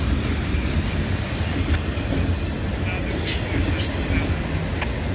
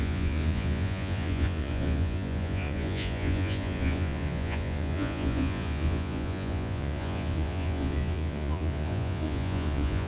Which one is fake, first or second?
second